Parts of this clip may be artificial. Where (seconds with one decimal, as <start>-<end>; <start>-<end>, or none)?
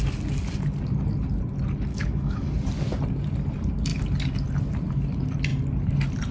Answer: 1.9-2.5